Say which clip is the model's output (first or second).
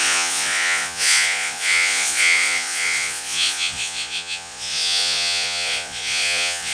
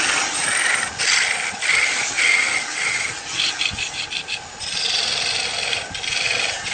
first